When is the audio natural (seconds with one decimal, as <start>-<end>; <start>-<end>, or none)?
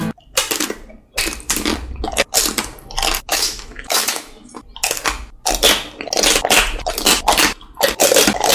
0.0-3.3; 4.5-8.5